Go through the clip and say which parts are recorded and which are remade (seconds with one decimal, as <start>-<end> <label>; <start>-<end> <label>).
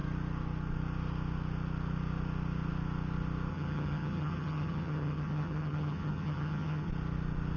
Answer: 0.0-3.5 recorded; 3.5-6.9 remade; 6.9-7.6 recorded